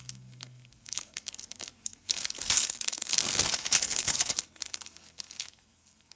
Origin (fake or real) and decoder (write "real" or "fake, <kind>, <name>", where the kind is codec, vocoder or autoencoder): fake, codec, SNAC